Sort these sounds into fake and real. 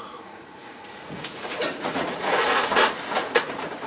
fake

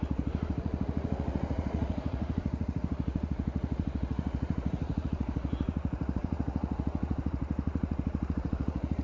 fake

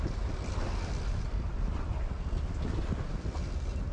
real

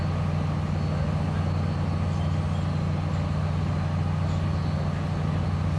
real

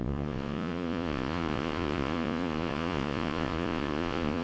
fake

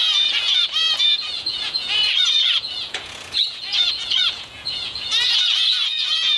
fake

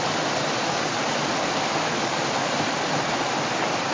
real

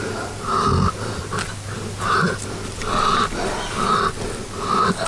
real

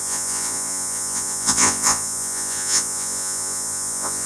fake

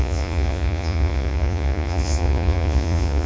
fake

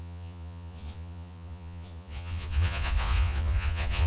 fake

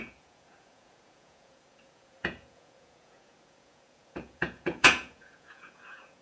fake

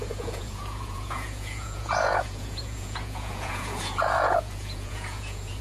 fake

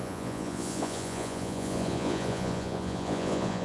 fake